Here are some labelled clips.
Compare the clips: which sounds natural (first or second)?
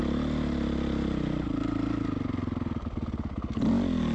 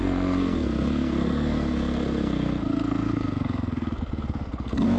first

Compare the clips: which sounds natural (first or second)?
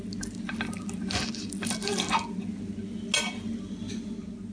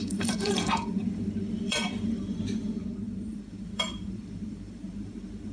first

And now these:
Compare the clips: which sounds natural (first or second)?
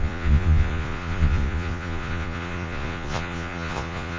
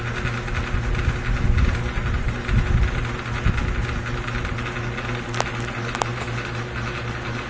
second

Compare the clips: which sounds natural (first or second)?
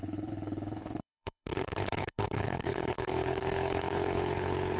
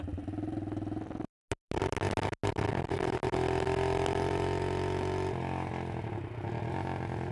second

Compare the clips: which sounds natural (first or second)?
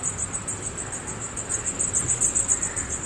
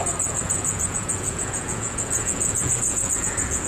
first